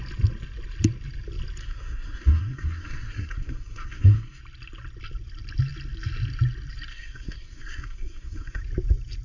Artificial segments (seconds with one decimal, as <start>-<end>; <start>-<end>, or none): 1.6-4.4; 6.9-8.6